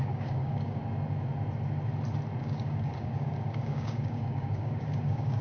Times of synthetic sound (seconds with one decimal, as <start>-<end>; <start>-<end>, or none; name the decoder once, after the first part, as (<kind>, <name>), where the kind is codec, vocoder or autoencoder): 0.0-0.8 (codec, DAC); 2.4-5.4